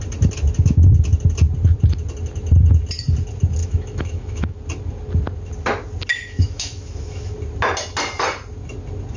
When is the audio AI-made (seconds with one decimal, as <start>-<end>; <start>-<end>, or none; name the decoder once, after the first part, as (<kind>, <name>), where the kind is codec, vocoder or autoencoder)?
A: 3.6-4.6 (autoencoder, DAC-VAE); 6.1-7.3